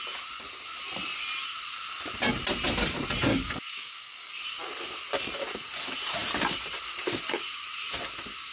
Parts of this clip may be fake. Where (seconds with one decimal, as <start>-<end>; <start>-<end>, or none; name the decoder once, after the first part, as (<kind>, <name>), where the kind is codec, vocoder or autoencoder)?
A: 3.3-4.4 (codec, DAC)